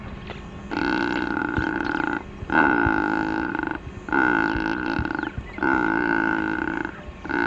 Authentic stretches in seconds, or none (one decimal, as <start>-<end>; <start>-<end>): 0.0-7.5